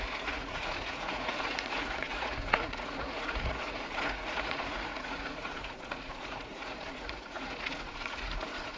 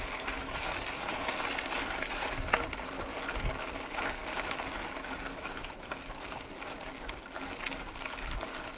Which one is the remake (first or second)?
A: first